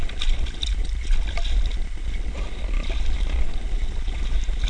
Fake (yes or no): no